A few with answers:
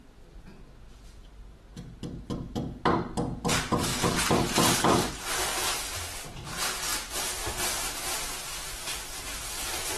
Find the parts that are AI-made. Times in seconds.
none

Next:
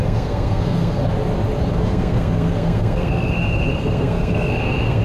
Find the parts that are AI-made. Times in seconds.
0.0-1.1 (codec, SNAC); 1.7-5.0

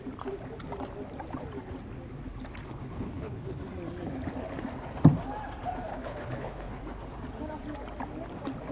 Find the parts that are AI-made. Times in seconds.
2.6-3.6 (codec, HILCodec); 5.9-6.8